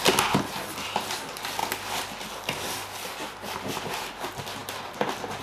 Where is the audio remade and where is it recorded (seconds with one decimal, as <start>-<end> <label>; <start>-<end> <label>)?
0.0-5.4 recorded